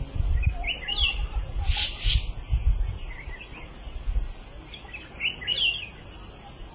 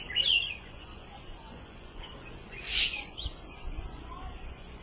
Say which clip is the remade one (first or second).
second